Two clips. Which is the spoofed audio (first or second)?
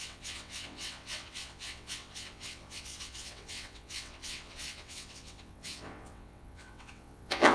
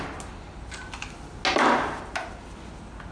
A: first